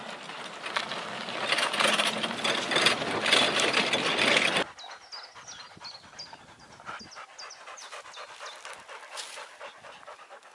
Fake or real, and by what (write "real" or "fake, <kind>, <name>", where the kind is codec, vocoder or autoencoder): real